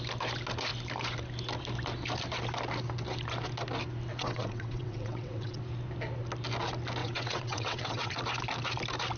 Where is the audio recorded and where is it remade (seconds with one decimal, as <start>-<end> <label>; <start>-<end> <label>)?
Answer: 0.0-4.1 recorded; 4.1-5.6 remade; 5.6-7.0 recorded; 7.0-8.2 remade; 8.2-9.2 recorded